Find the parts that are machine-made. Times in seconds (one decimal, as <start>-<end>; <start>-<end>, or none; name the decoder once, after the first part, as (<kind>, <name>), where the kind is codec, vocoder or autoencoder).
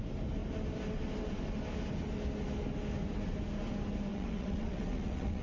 4.1-5.4 (vocoder, WaveNeXt)